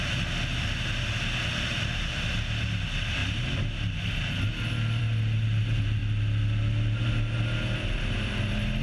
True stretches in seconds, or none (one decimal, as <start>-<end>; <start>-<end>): 0.0-8.8